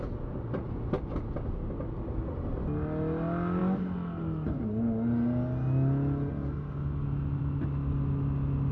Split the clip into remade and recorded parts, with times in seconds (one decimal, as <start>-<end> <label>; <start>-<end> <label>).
0.0-8.7 recorded

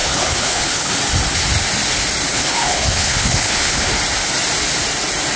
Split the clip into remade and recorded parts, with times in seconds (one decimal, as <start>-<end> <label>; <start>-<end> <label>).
0.0-0.9 remade; 0.9-2.3 recorded; 2.3-3.9 remade; 3.9-5.4 recorded

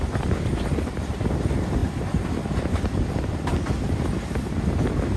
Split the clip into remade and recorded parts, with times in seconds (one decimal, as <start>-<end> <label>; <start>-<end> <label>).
0.0-5.2 recorded

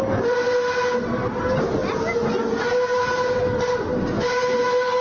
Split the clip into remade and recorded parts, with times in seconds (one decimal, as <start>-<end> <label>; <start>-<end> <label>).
0.0-5.0 recorded

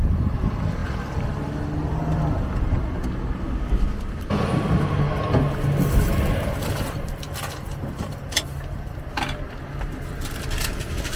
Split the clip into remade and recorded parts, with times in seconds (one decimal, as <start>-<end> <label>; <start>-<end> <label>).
0.0-11.2 recorded